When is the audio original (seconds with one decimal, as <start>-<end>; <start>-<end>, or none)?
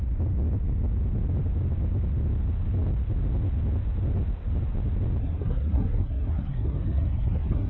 0.0-5.2